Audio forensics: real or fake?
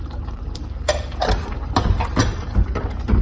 fake